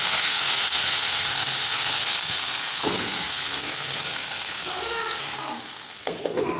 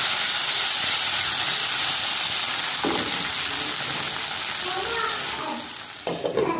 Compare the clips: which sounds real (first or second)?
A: second